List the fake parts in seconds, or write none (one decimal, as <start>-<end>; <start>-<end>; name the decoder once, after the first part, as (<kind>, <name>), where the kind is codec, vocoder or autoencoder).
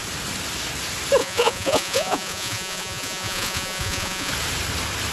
1.2-4.3 (vocoder, Vocos)